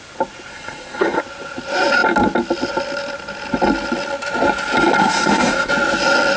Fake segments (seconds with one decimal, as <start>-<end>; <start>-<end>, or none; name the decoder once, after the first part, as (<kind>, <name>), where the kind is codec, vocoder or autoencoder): 0.5-1.2 (codec, SNAC); 5.0-5.7